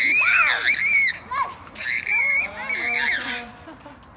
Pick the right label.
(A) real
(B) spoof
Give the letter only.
A